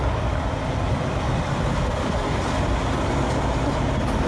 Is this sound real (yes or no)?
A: yes